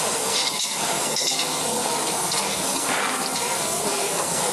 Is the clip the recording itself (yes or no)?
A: no